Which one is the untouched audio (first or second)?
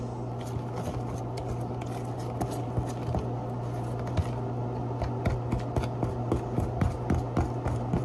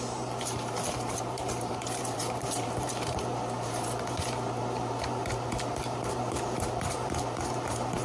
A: first